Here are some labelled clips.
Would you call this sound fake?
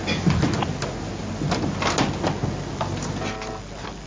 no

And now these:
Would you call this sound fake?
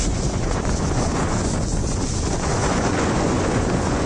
yes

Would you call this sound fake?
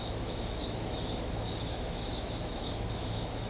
yes